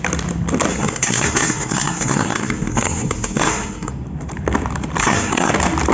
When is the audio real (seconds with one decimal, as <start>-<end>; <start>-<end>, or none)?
0.0-0.7; 3.9-5.0; 5.5-5.9